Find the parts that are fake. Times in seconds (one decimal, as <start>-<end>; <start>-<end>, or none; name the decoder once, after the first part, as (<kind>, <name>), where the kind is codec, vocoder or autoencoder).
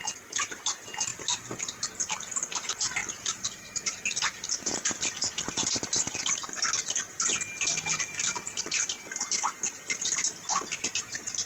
none